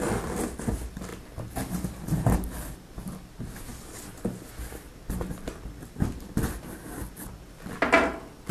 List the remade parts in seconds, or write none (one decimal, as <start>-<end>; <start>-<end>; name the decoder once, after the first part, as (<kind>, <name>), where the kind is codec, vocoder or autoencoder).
none